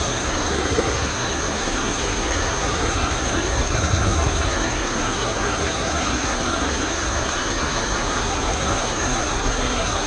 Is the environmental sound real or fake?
fake